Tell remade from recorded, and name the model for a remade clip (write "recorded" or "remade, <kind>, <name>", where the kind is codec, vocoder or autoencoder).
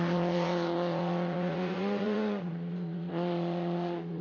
remade, vocoder, Vocos